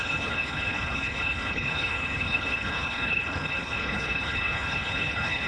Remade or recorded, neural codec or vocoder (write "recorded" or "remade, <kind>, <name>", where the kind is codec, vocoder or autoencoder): remade, codec, HILCodec